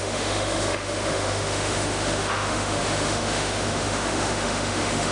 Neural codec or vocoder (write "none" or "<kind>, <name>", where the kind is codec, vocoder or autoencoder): autoencoder, DAC-VAE